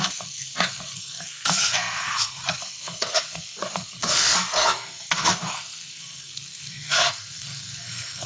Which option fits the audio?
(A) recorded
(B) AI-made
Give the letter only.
B